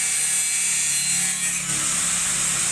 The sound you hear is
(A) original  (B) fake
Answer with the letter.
A